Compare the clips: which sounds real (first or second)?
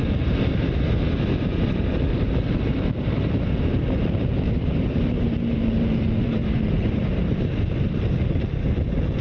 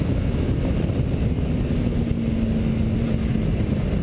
second